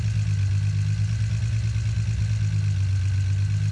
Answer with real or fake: real